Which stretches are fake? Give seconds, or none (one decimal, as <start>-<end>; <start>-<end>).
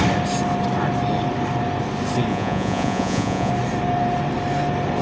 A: 2.3-3.5